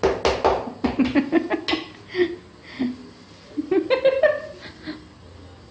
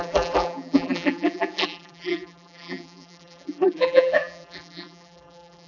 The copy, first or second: second